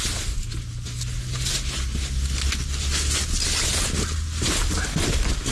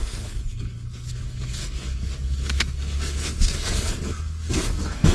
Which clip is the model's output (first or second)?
second